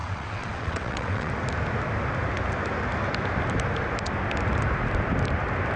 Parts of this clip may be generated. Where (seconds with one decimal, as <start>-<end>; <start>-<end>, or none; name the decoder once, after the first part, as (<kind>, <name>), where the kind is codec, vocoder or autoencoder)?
0.0-1.3 (vocoder, WaveNeXt)